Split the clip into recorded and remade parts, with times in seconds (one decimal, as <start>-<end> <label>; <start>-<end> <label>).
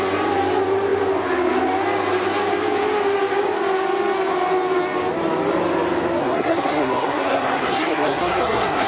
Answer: 0.0-6.2 recorded; 6.2-8.9 remade